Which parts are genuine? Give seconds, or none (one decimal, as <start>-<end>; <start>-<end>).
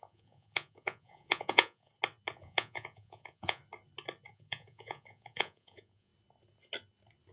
1.9-2.4; 3.6-4.3; 6.1-7.3